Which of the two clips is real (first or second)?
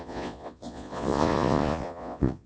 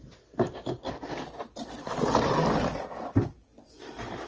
second